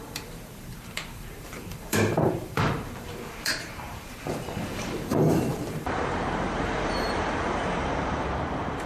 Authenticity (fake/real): fake